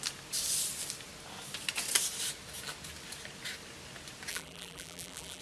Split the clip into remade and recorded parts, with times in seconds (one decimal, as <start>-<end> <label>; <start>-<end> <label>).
0.0-4.3 recorded; 4.3-5.4 remade